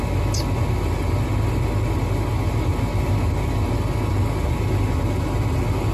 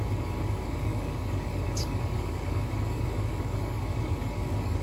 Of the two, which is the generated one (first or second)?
second